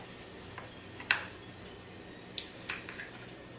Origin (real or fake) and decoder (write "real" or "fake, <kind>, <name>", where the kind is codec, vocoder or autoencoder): real